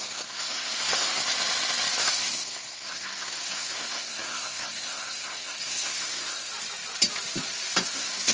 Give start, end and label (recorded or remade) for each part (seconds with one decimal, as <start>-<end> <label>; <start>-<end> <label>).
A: 0.0-1.2 remade; 1.2-2.0 recorded; 2.0-6.5 remade; 6.5-7.9 recorded; 7.9-8.3 remade